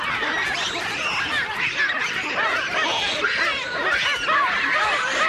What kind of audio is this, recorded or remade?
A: recorded